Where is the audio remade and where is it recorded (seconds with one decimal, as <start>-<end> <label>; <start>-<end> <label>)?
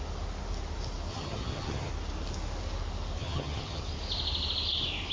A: 0.0-1.1 recorded; 1.1-1.9 remade; 1.9-3.2 recorded; 3.2-3.8 remade; 3.8-5.1 recorded